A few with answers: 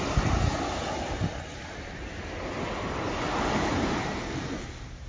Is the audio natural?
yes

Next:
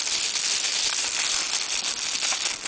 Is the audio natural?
yes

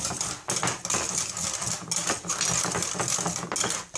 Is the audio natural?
yes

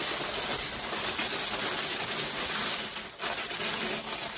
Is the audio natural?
yes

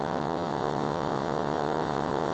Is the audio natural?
no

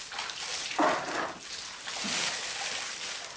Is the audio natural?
yes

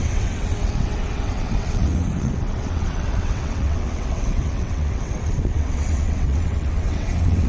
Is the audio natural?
no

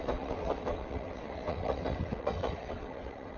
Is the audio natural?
no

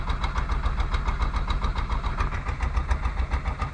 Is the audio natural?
yes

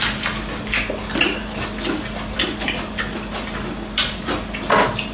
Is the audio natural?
yes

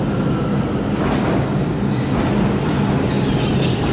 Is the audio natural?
yes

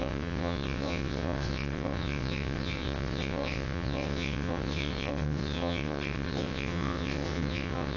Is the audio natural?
no